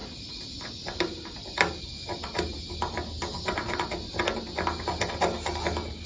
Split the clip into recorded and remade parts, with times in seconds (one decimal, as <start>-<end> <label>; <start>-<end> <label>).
0.0-6.1 recorded